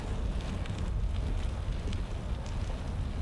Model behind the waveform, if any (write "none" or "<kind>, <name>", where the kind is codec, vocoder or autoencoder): none